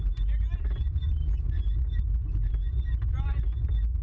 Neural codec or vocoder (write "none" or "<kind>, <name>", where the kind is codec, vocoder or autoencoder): none